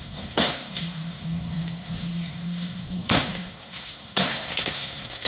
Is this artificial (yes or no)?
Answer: yes